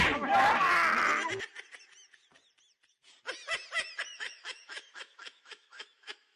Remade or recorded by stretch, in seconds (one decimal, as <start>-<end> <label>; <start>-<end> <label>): 0.0-4.1 recorded; 4.1-6.4 remade

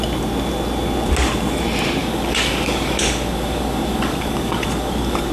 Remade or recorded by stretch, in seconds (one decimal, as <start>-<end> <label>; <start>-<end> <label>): 0.0-2.0 recorded; 2.0-5.3 remade

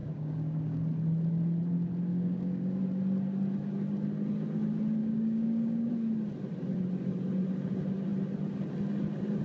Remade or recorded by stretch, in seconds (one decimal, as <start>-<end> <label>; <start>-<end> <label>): 0.0-0.8 remade; 0.8-2.1 recorded; 2.1-2.8 remade; 2.8-5.0 recorded; 5.0-5.9 remade; 5.9-9.4 recorded

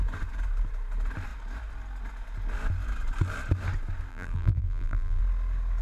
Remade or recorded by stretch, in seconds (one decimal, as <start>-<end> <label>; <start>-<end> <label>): 0.0-4.1 recorded; 4.1-5.2 remade; 5.2-5.8 recorded